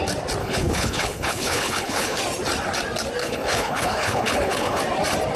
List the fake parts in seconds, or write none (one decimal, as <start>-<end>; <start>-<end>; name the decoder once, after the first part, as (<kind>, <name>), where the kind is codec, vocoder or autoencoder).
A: 0.4-2.2 (codec, HILCodec); 3.2-4.8